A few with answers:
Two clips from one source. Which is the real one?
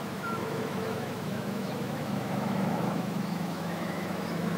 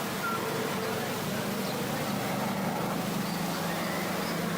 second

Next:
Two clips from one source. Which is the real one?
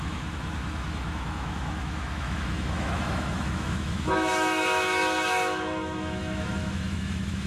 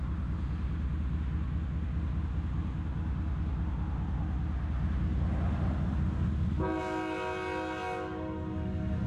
second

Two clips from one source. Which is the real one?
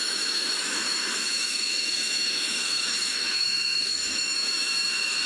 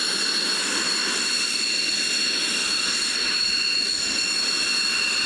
second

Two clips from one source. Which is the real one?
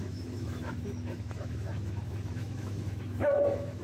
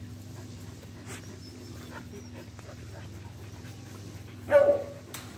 second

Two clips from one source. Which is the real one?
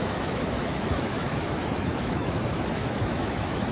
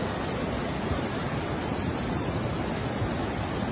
second